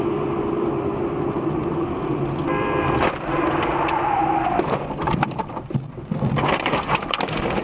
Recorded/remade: remade